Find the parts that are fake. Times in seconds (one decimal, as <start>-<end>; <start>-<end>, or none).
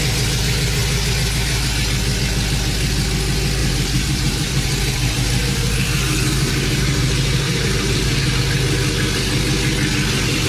3.6-8.4